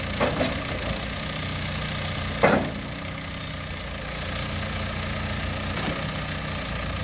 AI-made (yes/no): no